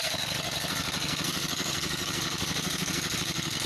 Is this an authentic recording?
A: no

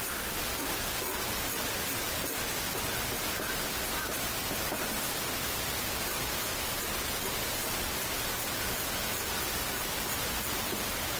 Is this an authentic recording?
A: yes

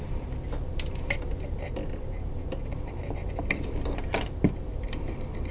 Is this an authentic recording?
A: no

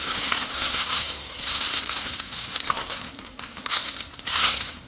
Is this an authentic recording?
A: no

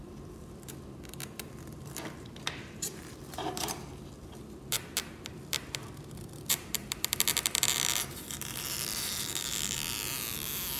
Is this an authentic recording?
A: no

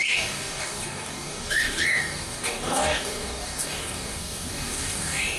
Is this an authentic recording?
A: no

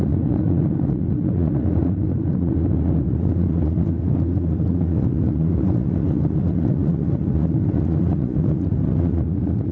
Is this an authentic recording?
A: no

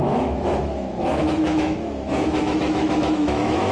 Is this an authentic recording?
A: no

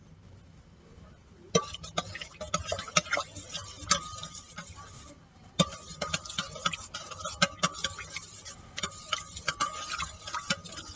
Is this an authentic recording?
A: yes